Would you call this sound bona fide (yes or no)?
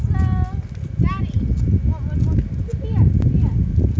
yes